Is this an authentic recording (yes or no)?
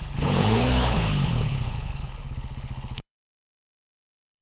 no